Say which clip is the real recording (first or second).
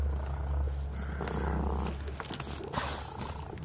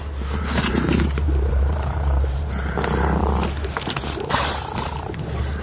first